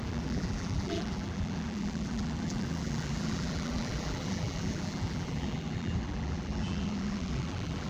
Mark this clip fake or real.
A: fake